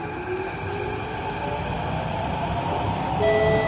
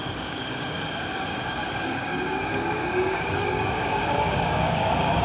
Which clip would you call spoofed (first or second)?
second